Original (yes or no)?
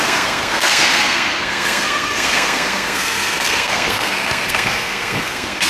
no